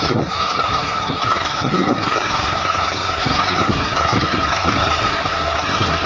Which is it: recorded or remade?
remade